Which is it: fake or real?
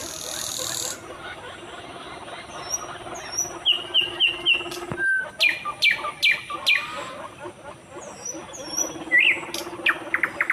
real